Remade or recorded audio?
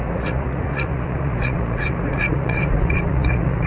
remade